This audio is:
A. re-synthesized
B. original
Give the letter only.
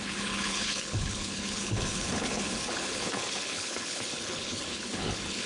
A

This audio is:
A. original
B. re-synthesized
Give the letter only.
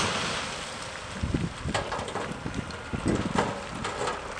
A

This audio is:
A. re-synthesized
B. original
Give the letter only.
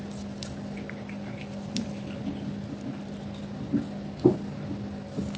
B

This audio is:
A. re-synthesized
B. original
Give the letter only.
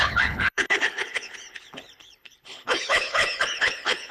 A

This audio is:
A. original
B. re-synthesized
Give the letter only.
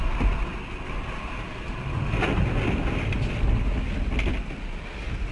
A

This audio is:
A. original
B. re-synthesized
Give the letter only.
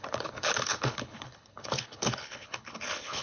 B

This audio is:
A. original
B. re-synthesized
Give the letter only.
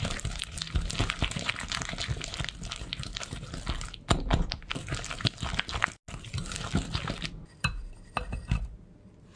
A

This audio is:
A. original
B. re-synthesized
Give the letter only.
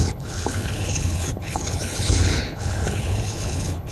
B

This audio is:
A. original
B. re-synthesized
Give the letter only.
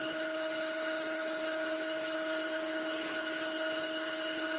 B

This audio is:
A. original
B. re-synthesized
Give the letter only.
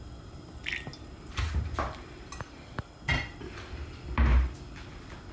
A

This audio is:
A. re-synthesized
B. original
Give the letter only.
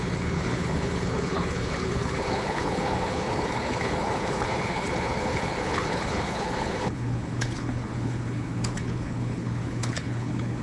A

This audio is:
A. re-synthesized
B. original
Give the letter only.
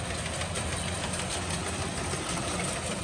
B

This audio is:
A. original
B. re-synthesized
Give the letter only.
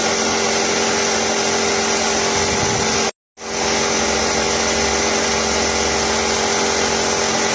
A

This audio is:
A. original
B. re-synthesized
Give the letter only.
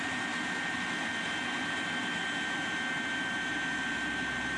A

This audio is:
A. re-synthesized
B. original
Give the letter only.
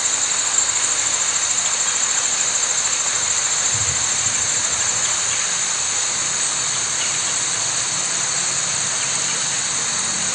B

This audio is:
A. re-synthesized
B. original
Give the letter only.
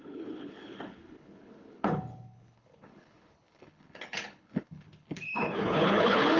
A